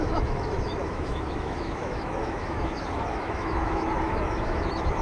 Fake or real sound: fake